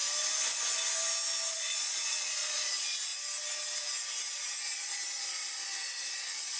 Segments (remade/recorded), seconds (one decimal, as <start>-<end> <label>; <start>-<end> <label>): 0.0-1.5 recorded; 1.5-3.1 remade; 3.1-4.6 recorded; 4.6-6.6 remade